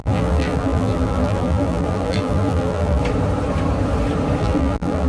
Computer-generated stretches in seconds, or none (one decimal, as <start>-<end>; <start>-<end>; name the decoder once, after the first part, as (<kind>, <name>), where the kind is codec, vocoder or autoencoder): 0.0-3.0 (vocoder, BigVGAN v2); 4.4-5.1